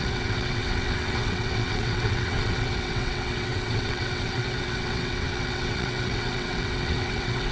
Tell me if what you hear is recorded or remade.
remade